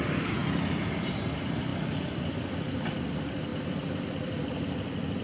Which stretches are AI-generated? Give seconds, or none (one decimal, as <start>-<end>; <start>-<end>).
none